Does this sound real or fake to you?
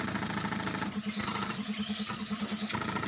real